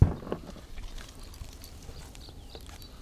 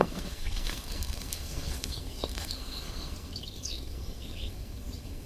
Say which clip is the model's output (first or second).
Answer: second